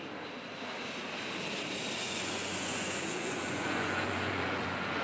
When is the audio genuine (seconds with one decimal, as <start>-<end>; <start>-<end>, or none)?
0.0-2.0

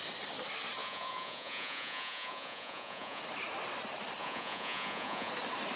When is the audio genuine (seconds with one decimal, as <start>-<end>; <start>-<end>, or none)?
0.0-0.8; 3.2-4.2; 5.3-5.8

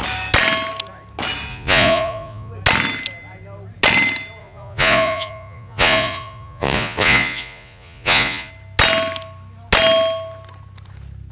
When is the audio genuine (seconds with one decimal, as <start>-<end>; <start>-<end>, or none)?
0.0-1.5; 2.5-4.4; 8.5-11.3

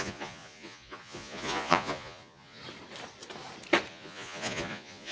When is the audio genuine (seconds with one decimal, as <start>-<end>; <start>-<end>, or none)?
2.6-3.9

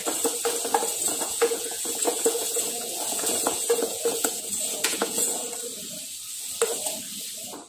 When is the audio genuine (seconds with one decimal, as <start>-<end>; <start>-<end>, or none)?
0.0-0.9; 5.5-7.7

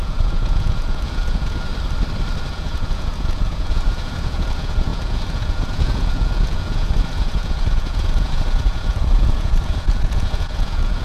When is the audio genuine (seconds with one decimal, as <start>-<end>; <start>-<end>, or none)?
1.7-2.5